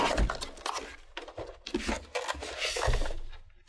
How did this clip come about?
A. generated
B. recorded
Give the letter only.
B